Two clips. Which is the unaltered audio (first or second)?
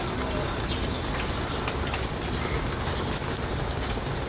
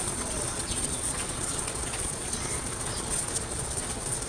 first